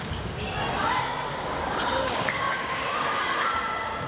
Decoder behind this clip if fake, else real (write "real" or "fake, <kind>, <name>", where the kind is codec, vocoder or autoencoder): fake, codec, DAC